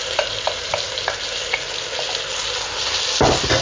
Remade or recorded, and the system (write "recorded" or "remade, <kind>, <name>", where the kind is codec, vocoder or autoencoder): recorded